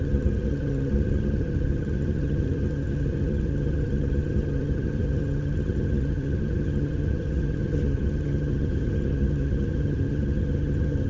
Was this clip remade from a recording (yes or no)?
yes